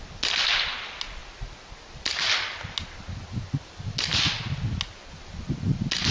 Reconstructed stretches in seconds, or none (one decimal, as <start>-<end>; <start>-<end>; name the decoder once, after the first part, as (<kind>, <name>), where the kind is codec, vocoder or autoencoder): none